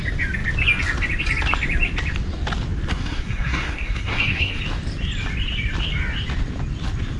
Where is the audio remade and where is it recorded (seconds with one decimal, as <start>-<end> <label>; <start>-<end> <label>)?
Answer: 0.0-2.9 recorded; 2.9-4.6 remade; 4.6-7.2 recorded